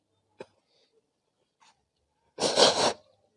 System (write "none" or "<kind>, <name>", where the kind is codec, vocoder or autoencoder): none